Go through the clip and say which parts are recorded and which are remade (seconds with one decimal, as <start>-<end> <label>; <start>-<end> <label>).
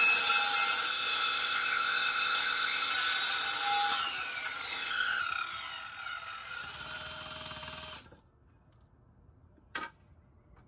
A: 0.0-0.9 recorded; 0.9-2.9 remade; 2.9-4.7 recorded; 4.7-5.2 remade; 5.2-10.7 recorded